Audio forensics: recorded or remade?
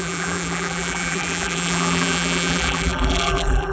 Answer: remade